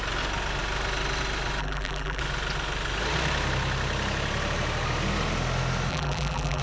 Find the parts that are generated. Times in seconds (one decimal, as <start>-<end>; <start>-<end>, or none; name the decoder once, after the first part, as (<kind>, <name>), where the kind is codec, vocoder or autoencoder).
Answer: 1.6-2.2 (vocoder, BigVGAN v2); 5.9-6.6